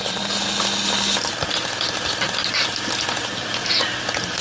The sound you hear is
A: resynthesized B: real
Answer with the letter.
B